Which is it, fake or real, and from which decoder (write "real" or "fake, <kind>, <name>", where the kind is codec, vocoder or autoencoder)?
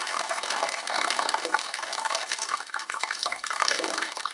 fake, codec, DAC